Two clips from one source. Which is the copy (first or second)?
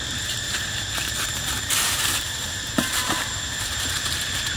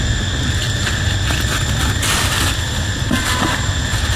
first